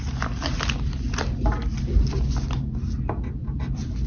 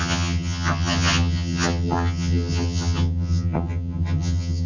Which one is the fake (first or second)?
second